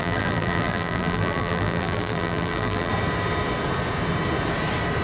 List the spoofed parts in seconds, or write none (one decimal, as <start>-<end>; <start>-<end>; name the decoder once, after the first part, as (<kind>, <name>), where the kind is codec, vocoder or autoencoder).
0.0-2.9 (vocoder, BigVGAN v2)